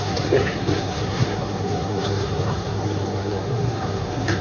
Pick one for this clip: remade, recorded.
remade